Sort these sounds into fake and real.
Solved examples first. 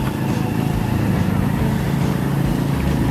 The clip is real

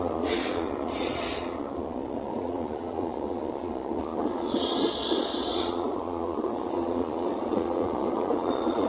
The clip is fake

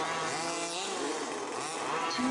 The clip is real